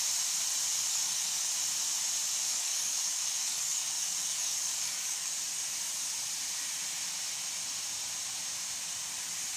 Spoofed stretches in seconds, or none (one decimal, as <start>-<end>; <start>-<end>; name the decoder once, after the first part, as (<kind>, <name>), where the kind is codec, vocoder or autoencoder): 0.9-1.5 (codec, DAC); 2.5-5.3